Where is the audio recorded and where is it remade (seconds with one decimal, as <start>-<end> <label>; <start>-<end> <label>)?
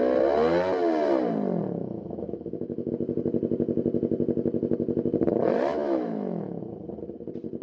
0.0-1.8 recorded; 1.8-2.9 remade; 2.9-5.7 recorded; 5.7-6.6 remade; 6.6-7.6 recorded